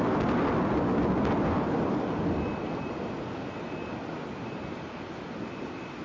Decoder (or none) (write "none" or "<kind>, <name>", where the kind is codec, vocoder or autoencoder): none